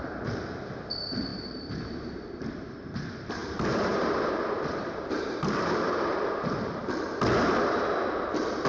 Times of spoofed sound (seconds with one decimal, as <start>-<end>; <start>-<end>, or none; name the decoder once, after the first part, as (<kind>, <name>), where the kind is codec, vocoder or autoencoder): 0.0-6.8 (vocoder, BigVGAN v2)